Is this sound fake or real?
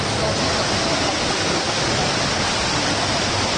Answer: real